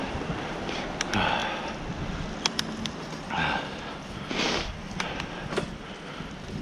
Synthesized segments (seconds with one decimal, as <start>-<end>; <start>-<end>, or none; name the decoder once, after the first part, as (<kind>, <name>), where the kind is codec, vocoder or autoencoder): 0.0-1.4 (vocoder, BigVGAN v2); 5.2-6.6

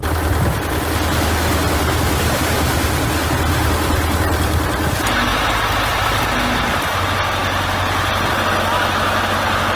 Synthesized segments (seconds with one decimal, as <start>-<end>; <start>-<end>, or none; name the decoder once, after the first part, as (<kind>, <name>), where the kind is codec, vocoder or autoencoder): none

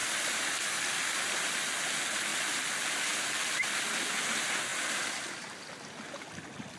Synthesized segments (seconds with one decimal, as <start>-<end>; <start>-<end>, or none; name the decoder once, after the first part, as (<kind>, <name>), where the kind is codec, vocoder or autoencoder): 2.3-3.4 (vocoder, BigVGAN v2); 4.7-5.3

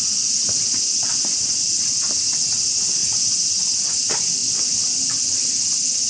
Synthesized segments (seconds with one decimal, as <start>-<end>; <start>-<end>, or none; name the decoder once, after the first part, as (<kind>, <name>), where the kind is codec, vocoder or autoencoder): 4.4-5.5 (vocoder, BigVGAN v2)

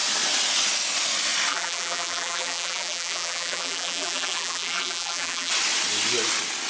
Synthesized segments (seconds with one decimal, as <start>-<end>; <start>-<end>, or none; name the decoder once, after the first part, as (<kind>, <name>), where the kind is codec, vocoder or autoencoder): 1.5-5.5 (vocoder, BigVGAN v2)